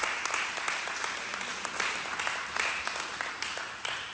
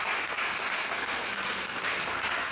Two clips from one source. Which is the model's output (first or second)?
second